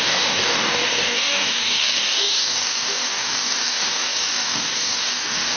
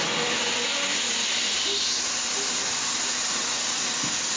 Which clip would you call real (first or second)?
second